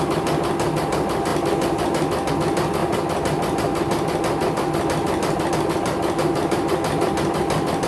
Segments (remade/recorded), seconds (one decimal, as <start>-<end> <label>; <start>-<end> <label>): 0.0-7.9 recorded